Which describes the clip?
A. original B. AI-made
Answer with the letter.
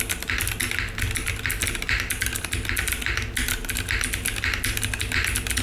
A